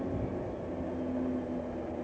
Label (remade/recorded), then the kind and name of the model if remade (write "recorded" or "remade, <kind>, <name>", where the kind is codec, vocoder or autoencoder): recorded